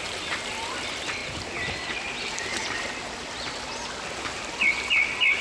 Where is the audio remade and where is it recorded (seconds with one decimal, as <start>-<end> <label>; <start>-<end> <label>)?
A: 0.0-1.2 recorded; 1.2-3.9 remade; 3.9-5.4 recorded